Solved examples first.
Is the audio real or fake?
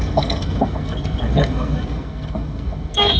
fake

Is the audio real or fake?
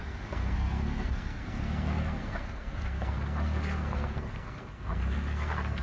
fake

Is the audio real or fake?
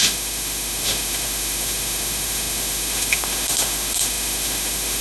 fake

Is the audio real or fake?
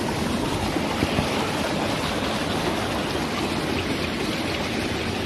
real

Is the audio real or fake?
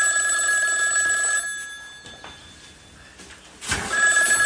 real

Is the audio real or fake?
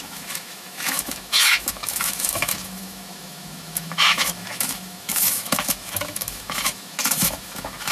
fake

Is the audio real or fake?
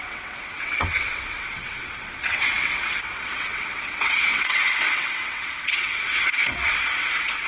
fake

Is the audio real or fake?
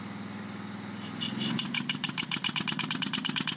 real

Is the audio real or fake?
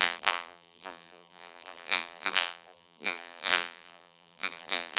fake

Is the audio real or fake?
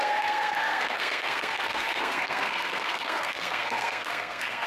fake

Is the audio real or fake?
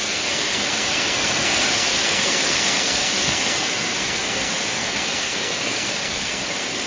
fake